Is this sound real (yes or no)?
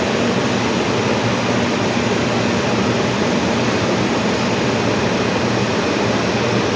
yes